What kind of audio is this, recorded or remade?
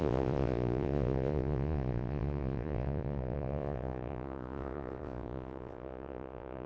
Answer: remade